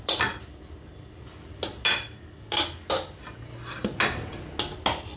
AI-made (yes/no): no